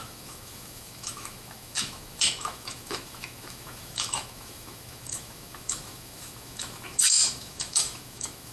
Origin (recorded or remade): remade